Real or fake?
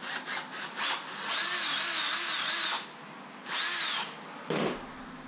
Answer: real